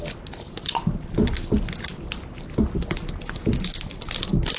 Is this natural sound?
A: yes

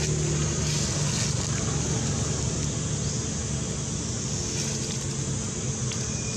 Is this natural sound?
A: yes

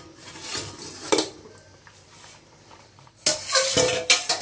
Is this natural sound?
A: yes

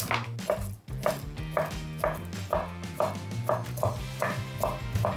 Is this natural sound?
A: yes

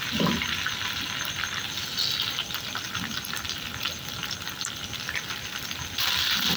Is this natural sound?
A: yes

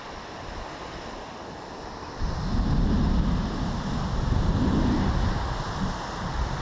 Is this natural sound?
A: yes